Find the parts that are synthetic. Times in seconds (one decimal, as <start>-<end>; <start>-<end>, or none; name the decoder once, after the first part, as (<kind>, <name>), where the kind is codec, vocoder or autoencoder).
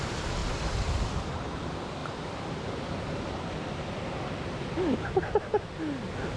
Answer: 0.4-0.9 (vocoder, BigVGAN v2); 2.0-5.8